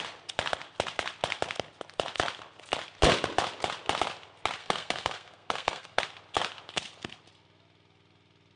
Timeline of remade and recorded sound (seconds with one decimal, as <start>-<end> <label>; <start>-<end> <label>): 0.0-4.6 recorded; 4.6-6.0 remade; 6.0-8.6 recorded